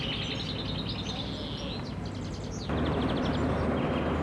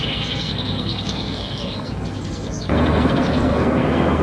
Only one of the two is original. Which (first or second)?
first